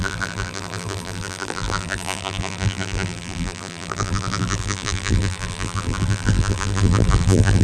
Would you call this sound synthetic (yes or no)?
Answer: yes